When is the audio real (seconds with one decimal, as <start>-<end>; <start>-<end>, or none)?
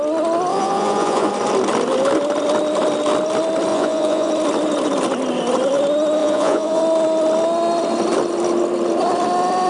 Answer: 0.0-0.5; 1.3-3.7; 4.3-6.2; 6.8-9.7